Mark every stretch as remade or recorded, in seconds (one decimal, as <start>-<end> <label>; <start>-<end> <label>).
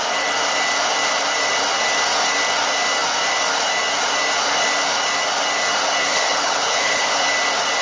0.0-6.0 recorded; 6.0-7.1 remade; 7.1-7.8 recorded